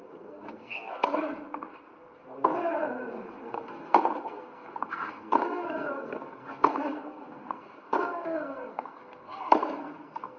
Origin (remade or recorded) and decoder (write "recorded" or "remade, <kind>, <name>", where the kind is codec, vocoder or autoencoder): remade, codec, SNAC